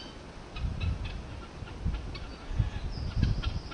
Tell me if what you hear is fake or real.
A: real